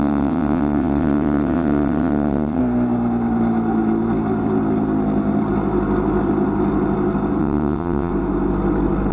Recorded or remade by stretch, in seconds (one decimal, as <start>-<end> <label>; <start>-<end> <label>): 0.0-2.6 remade; 2.6-7.4 recorded; 7.4-8.1 remade; 8.1-9.1 recorded

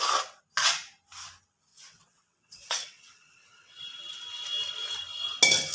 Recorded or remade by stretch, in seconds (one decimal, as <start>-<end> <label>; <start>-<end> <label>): 0.0-1.7 recorded; 1.7-3.8 remade; 3.8-5.7 recorded

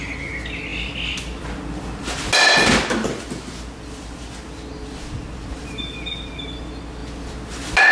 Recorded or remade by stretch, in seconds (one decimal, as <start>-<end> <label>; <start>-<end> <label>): 0.0-7.9 recorded

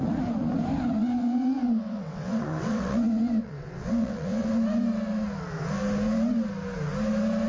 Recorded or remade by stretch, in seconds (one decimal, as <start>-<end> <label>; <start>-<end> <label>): 0.0-1.0 recorded; 1.0-4.5 remade; 4.5-7.5 recorded

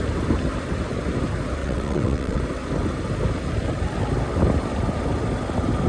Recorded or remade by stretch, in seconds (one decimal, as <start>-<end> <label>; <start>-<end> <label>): 0.0-1.6 recorded; 1.6-2.4 remade; 2.4-5.9 recorded